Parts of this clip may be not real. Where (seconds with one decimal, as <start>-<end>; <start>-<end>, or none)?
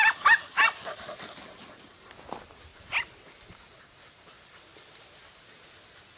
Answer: none